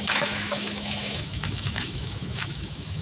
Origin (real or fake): fake